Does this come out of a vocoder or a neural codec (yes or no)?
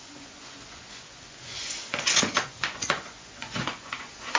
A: yes